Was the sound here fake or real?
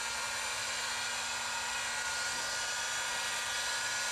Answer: real